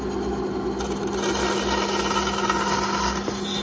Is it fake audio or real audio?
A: real